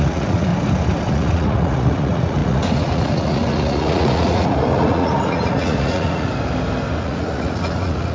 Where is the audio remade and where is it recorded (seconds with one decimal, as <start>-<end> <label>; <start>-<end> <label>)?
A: 0.0-0.5 remade; 0.5-1.0 recorded; 1.0-6.3 remade; 6.3-7.0 recorded; 7.0-8.1 remade